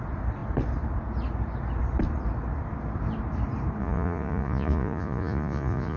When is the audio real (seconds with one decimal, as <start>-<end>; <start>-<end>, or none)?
0.0-3.8